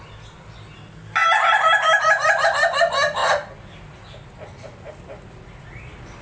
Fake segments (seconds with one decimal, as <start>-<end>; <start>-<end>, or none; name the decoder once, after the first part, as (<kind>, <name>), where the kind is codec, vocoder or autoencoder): 3.2-4.9 (vocoder, BigVGAN v2)